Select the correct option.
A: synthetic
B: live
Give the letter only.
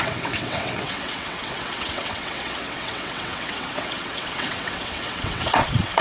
A